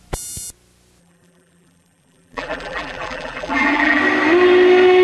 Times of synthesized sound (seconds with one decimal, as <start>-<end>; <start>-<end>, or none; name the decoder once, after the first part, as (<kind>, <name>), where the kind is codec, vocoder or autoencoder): 1.0-4.0 (vocoder, BigVGAN v2)